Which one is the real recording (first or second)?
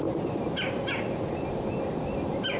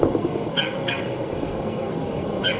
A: first